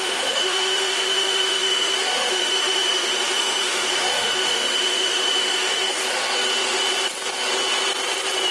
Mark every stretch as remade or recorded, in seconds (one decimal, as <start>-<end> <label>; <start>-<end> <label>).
0.0-6.0 remade; 6.0-8.5 recorded